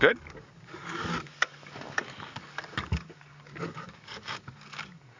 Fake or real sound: fake